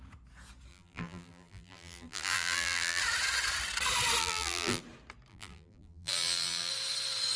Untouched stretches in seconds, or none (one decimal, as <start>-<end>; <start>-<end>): 0.0-0.7; 3.0-4.2; 4.8-5.3; 6.7-7.4